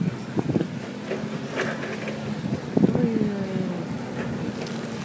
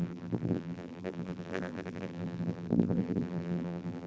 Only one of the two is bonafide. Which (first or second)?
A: first